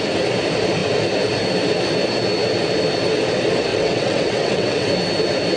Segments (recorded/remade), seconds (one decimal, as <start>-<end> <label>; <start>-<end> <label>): 0.0-3.7 recorded; 3.7-4.9 remade; 4.9-5.6 recorded